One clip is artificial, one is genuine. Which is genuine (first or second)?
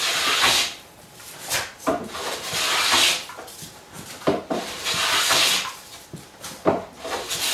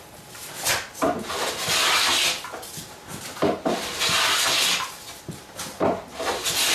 second